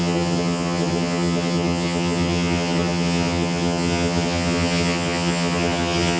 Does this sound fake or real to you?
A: fake